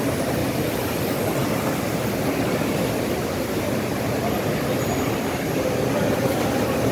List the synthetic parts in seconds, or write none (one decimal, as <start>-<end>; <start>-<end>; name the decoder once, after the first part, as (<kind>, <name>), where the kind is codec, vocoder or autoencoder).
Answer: none